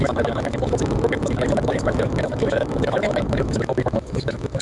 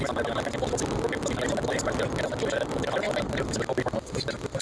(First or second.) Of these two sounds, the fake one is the first